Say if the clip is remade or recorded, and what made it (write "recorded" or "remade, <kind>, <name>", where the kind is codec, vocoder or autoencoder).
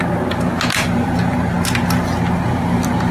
recorded